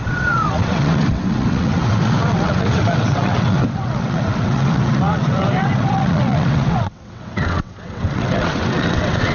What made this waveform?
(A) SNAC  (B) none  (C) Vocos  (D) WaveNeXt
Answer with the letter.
D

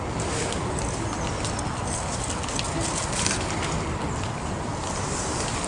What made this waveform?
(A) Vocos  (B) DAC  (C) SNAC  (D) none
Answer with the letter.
D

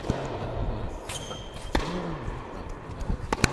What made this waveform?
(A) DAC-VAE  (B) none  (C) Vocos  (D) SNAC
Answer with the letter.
B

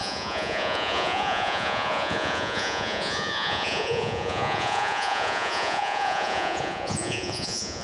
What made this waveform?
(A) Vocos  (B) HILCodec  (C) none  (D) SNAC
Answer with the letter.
A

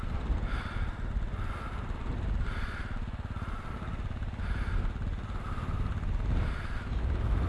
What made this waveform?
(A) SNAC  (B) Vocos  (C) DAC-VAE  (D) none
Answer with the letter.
D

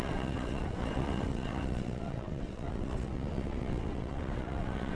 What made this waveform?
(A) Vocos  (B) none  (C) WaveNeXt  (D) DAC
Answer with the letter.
C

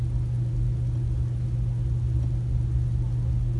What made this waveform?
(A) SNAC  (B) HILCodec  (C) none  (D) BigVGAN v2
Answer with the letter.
C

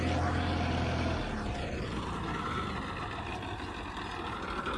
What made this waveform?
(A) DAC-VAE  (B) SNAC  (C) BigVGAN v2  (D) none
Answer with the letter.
D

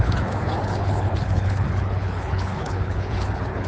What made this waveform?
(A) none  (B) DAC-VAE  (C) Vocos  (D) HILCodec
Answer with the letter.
D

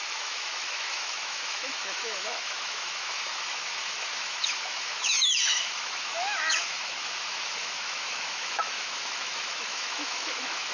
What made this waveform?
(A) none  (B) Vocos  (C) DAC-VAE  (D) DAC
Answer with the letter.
C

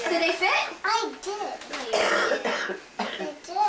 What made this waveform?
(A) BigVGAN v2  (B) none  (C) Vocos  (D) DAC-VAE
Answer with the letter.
B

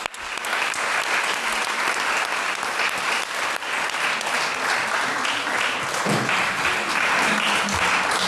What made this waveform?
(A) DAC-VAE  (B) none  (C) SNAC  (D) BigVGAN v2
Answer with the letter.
B